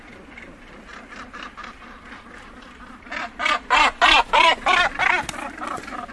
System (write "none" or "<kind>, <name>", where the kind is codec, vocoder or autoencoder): none